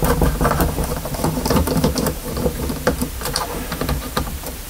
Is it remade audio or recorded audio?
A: remade